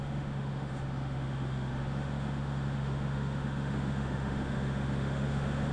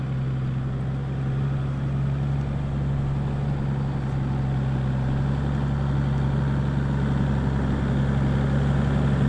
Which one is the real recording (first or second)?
second